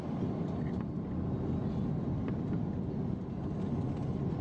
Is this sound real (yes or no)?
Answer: yes